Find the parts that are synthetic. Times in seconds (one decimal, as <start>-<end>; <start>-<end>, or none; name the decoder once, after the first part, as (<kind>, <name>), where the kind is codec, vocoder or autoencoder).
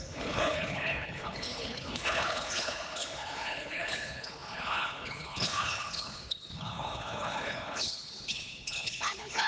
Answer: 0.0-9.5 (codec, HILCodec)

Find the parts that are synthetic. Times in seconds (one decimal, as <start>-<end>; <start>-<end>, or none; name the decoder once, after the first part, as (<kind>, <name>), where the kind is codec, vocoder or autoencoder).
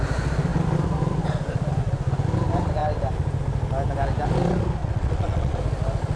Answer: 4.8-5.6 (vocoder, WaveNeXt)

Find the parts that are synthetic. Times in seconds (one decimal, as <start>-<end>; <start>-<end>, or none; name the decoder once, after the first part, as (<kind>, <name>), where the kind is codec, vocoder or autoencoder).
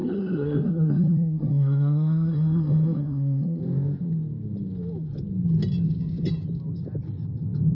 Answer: 0.0-3.6 (codec, SNAC)